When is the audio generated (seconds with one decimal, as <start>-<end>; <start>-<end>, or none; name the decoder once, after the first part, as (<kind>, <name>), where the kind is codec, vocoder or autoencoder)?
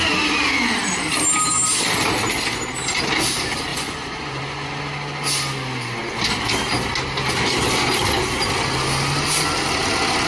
3.7-4.8 (vocoder, Vocos)